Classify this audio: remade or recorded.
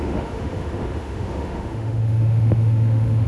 remade